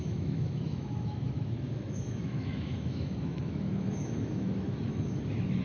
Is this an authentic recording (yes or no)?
no